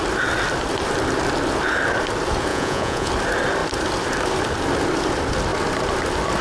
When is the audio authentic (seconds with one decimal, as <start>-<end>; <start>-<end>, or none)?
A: 0.0-2.5; 3.1-6.4